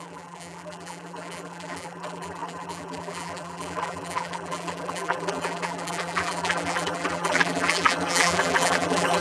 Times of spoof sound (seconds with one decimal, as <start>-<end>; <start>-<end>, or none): 0.0-9.2